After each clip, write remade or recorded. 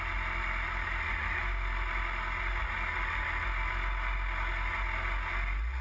recorded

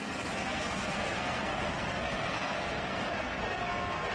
remade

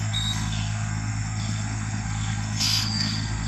remade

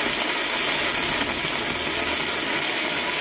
recorded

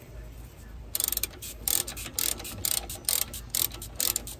remade